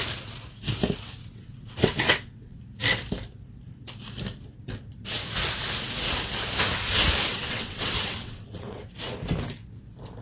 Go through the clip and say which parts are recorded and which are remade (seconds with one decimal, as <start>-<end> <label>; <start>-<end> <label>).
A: 0.0-1.2 recorded; 1.2-2.6 remade; 2.6-7.3 recorded; 7.3-8.8 remade; 8.8-10.2 recorded